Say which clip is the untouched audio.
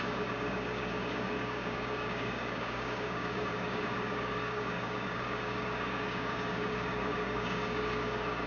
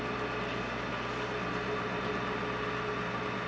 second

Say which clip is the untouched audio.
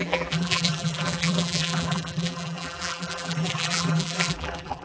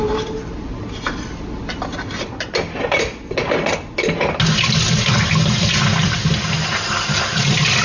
second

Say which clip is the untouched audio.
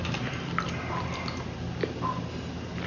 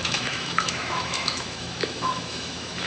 first